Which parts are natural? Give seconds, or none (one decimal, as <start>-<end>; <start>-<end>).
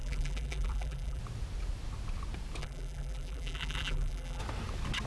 1.2-2.6; 4.4-5.1